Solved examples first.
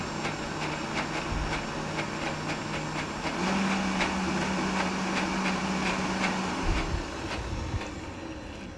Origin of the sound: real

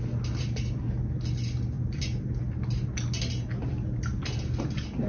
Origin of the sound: real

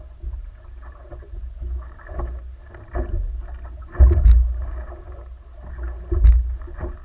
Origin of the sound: real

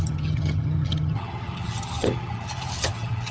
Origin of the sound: fake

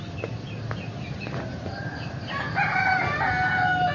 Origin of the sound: real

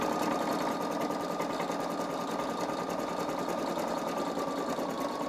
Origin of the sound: real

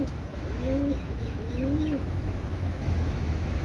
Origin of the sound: fake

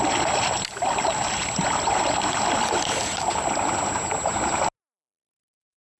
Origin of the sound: real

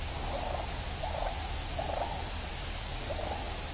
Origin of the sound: real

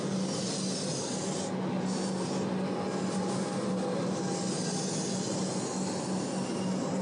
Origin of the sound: real